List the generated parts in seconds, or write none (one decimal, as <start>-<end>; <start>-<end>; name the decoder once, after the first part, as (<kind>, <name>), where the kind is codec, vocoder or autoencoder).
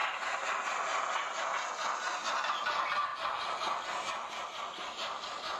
0.0-0.9 (vocoder, BigVGAN v2); 2.3-5.6